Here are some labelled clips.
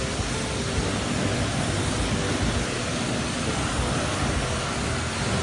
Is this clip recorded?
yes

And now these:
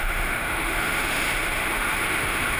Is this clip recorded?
no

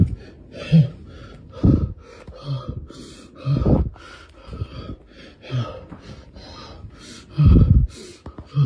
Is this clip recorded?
yes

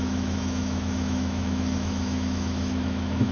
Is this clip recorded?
no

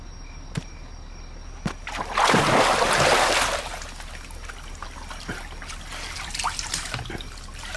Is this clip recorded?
yes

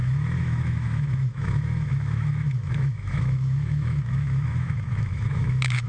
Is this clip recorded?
no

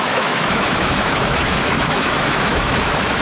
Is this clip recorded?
no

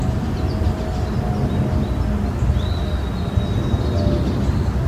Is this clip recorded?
yes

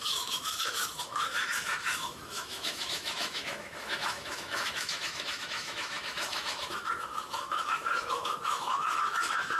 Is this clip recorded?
no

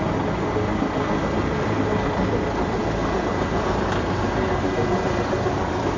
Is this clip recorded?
yes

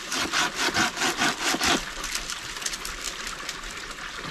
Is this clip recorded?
yes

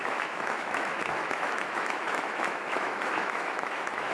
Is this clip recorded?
no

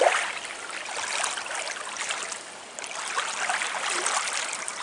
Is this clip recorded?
yes